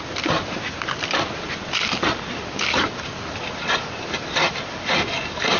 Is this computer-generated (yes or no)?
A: no